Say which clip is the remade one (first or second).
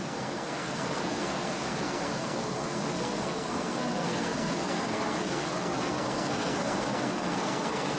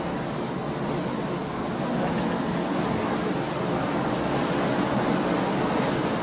first